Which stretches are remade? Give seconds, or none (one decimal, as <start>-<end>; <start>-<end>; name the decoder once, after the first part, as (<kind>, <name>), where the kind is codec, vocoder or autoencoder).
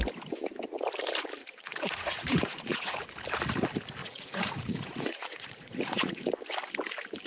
1.4-3.0 (vocoder, Vocos); 4.0-6.3